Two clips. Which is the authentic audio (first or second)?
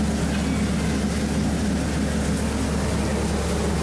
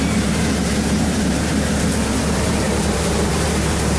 first